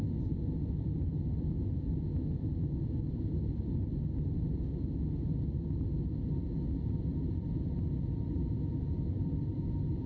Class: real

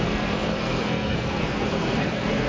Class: fake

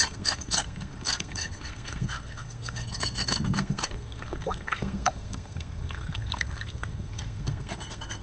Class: fake